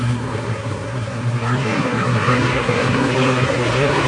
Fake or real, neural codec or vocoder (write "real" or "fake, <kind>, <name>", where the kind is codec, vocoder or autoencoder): fake, codec, SNAC